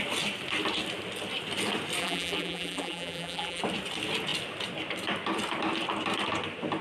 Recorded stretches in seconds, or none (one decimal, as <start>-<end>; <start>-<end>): 0.0-2.0; 3.6-6.8